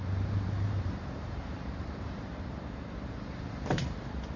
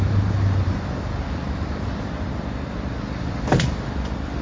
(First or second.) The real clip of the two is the second